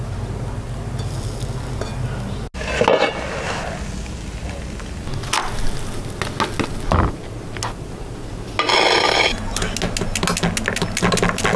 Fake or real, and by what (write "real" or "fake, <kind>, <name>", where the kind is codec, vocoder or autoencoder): real